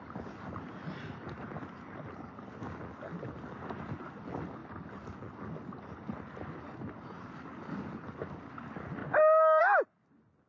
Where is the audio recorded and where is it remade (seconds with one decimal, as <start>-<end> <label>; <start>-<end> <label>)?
0.0-10.5 recorded